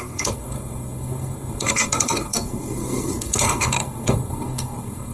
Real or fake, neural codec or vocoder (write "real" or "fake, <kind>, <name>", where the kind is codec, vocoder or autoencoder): fake, codec, SNAC